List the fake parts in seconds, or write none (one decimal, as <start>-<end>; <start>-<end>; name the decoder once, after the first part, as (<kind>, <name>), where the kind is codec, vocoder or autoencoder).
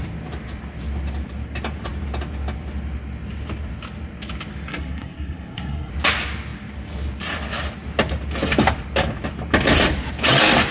4.7-5.9 (codec, SNAC)